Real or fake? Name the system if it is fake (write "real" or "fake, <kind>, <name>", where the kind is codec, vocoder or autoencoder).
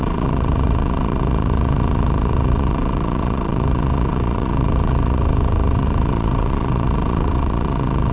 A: fake, vocoder, WaveNeXt